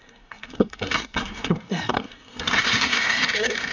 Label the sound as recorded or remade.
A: remade